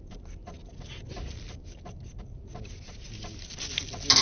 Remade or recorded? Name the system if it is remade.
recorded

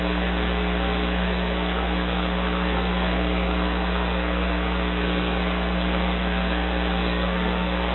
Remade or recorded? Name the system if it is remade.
remade, codec, SNAC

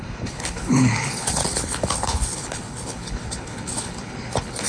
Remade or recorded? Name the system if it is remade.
remade, codec, HILCodec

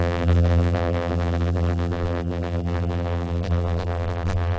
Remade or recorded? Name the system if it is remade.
remade, vocoder, BigVGAN v2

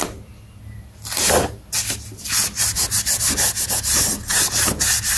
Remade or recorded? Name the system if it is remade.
recorded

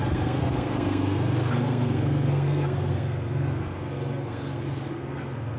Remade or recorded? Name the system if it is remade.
remade, codec, SNAC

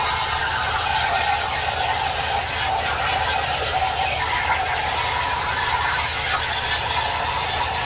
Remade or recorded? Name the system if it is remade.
recorded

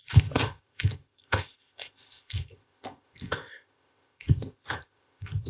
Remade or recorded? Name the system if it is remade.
remade, codec, ZipCodec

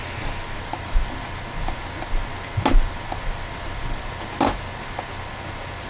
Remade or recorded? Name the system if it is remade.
recorded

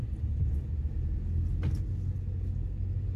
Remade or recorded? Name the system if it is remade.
recorded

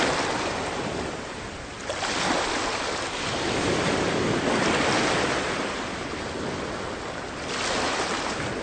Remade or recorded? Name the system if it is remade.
recorded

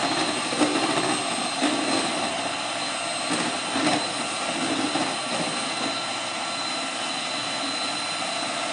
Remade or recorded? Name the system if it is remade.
recorded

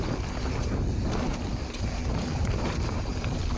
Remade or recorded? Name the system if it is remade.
recorded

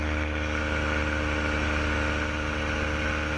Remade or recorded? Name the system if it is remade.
recorded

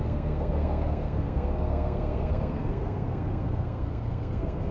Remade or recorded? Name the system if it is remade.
remade, codec, SNAC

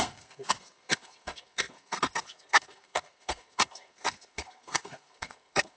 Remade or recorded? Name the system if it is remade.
remade, codec, SNAC